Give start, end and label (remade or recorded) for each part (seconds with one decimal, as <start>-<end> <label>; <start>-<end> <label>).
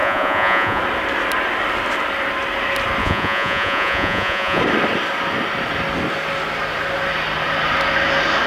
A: 0.0-0.8 remade; 0.8-3.0 recorded; 3.0-4.6 remade; 4.6-8.5 recorded